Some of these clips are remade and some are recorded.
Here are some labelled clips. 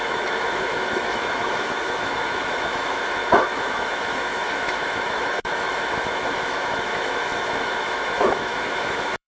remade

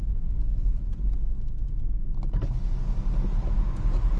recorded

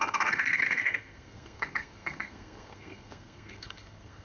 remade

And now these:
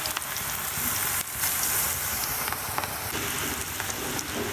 recorded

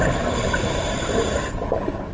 recorded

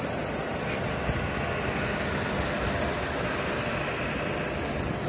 recorded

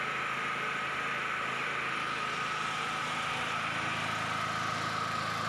recorded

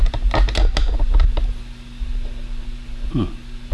recorded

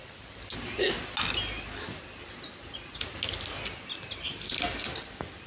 recorded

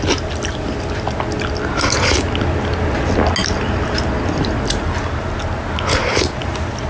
recorded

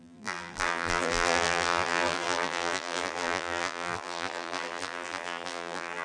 remade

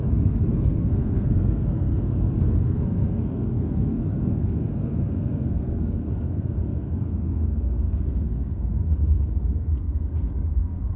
remade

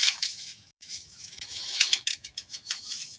remade